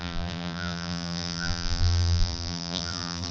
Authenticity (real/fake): fake